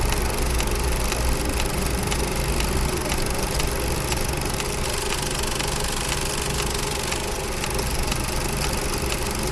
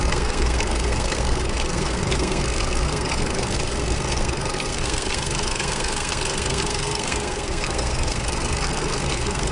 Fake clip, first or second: second